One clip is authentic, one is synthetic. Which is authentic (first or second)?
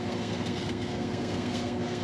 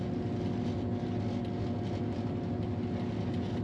second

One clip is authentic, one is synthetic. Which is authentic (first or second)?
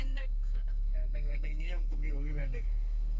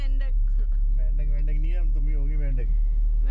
second